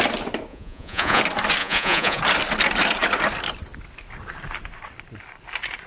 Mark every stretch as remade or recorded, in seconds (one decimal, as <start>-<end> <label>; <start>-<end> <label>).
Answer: 0.0-0.5 recorded; 0.5-1.2 remade; 1.2-1.6 recorded; 1.6-2.2 remade; 2.2-5.9 recorded